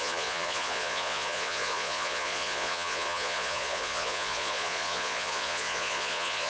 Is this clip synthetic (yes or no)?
yes